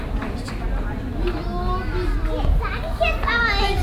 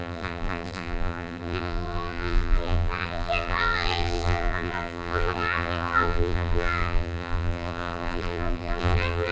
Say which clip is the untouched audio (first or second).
first